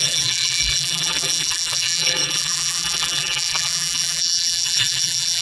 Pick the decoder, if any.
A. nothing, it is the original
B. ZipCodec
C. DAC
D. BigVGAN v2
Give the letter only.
D